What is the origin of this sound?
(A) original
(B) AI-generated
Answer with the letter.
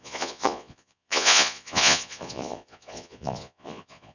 B